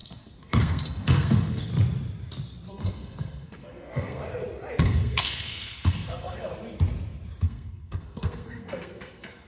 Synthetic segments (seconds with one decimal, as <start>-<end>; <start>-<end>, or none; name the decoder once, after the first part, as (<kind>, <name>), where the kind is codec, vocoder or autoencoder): 0.0-1.7 (codec, SNAC); 2.7-4.2; 4.8-6.5; 7.4-9.5